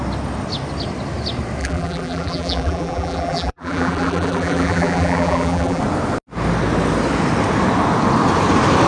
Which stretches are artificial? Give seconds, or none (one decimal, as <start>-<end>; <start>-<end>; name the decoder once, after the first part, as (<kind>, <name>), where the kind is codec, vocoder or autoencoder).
1.6-5.8 (vocoder, BigVGAN v2)